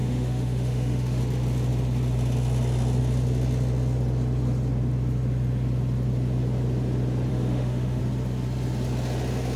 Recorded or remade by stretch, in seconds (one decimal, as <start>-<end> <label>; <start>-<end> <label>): 0.0-1.2 remade; 1.2-7.3 recorded; 7.3-8.0 remade; 8.0-9.6 recorded